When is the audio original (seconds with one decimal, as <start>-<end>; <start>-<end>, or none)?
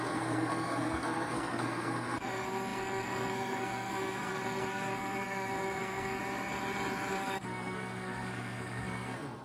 6.2-7.1